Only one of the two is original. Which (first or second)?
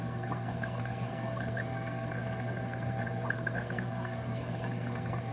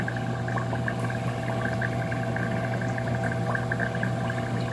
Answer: second